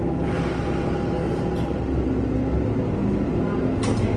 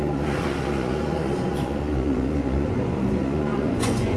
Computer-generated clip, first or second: second